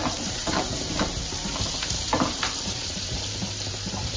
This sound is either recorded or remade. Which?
remade